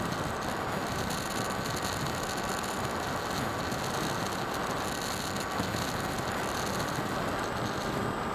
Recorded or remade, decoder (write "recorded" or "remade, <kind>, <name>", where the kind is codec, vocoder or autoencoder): recorded